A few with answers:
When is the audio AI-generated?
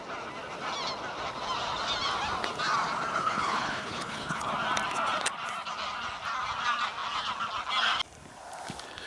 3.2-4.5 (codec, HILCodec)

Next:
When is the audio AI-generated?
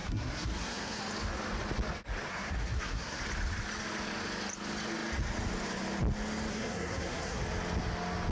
0.0-1.0 (codec, SNAC); 2.3-3.2; 6.5-7.4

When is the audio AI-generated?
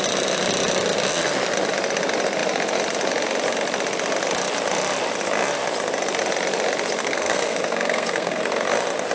7.0-8.4 (codec, SNAC)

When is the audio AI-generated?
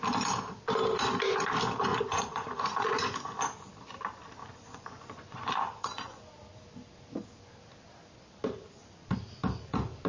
1.9-3.4 (vocoder, Vocos); 4.4-6.2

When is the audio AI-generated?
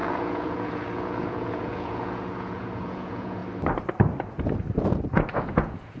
0.0-3.4 (vocoder, Vocos); 5.3-6.0